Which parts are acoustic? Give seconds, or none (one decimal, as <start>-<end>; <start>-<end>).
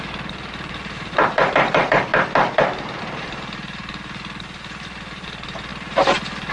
2.1-3.0